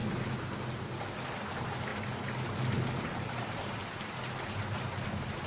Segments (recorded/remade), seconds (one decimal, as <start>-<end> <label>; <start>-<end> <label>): 0.0-1.5 recorded; 1.5-1.9 remade; 1.9-3.0 recorded; 3.0-3.8 remade; 3.8-5.1 recorded; 5.1-5.5 remade